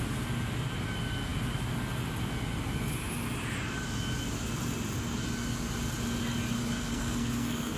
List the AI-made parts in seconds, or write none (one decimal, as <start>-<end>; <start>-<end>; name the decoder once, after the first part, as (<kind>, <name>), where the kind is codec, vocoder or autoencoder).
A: 6.6-7.8 (codec, SNAC)